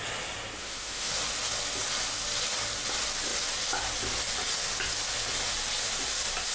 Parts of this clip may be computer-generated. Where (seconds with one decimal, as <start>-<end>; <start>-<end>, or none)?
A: 0.6-1.1